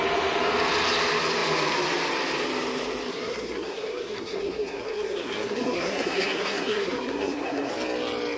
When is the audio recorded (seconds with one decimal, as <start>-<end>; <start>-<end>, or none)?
0.0-3.1; 7.7-8.4